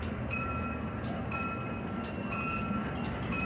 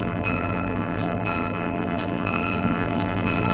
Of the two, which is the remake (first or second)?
second